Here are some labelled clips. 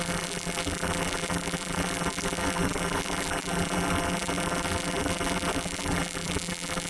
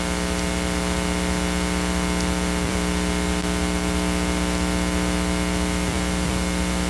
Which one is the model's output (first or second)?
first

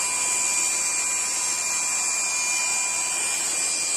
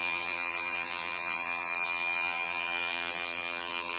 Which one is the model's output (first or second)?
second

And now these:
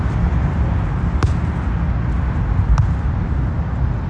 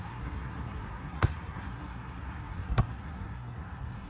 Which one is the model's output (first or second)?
second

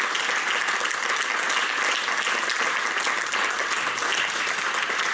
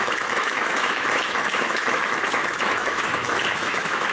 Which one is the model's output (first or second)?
second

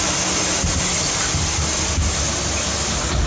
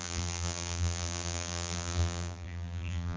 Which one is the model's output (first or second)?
second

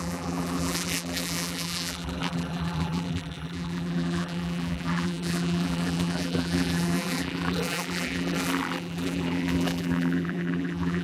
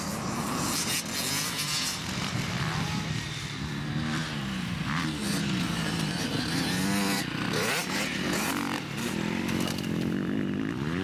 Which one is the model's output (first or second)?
first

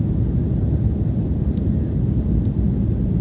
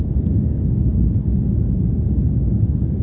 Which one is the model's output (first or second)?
second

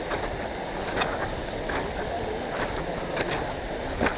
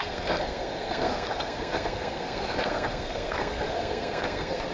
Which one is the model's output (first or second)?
second